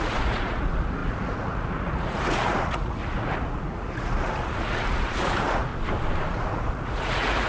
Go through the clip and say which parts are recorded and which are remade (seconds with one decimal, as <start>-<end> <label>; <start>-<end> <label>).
0.0-5.7 remade; 5.7-6.3 recorded; 6.3-7.5 remade